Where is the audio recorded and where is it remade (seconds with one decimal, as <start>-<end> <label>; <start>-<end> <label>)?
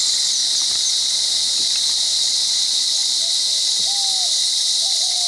0.0-5.3 recorded